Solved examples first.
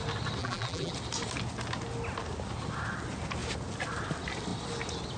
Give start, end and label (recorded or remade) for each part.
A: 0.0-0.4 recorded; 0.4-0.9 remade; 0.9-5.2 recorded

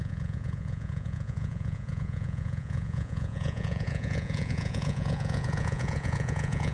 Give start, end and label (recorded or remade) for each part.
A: 0.0-6.7 remade